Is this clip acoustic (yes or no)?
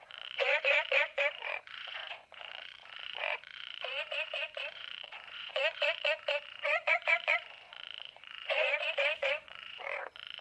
no